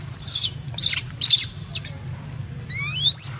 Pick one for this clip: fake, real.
fake